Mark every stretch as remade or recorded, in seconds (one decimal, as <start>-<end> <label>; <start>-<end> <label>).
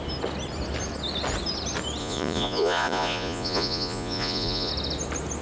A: 0.0-2.0 recorded; 2.0-4.7 remade; 4.7-5.4 recorded